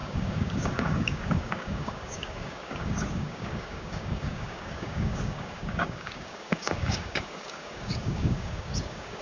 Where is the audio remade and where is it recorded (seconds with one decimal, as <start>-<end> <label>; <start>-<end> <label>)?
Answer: 0.0-9.2 remade